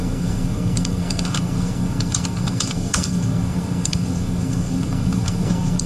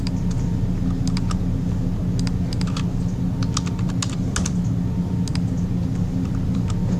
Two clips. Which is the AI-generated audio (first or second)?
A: first